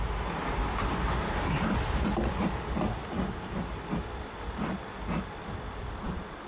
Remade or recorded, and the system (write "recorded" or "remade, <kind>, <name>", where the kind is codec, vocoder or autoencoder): recorded